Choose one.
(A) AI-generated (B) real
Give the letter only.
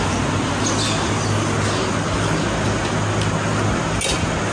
B